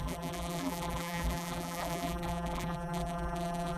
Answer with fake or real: fake